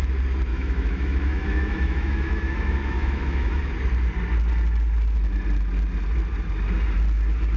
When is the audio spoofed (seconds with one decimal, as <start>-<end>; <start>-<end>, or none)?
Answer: 0.5-3.6